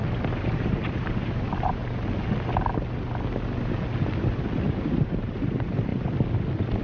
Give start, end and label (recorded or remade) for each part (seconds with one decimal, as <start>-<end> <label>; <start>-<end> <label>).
0.0-0.5 recorded; 0.5-1.8 remade; 1.8-4.7 recorded; 4.7-5.9 remade; 5.9-6.8 recorded